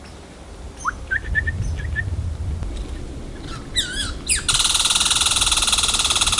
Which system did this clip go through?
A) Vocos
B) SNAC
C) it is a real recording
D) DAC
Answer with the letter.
C